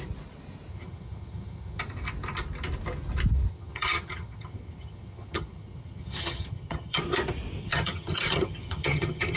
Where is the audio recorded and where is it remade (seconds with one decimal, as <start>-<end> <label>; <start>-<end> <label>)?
0.0-0.7 recorded; 0.7-1.8 remade; 1.8-3.5 recorded; 3.5-7.0 remade; 7.0-7.6 recorded; 7.6-9.4 remade